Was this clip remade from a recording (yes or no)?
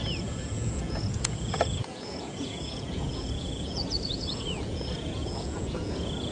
yes